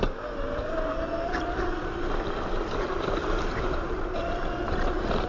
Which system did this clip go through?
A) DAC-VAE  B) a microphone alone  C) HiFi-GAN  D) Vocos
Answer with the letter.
B